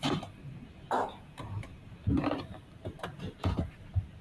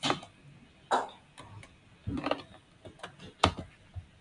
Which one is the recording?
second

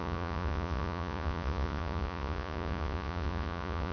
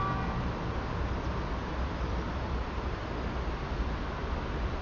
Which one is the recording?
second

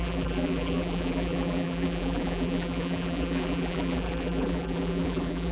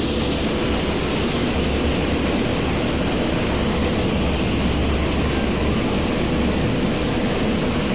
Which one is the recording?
second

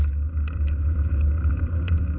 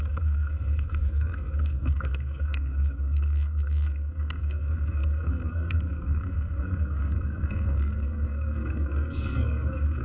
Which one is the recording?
first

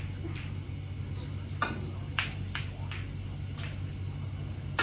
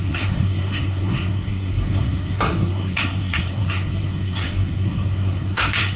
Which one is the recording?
first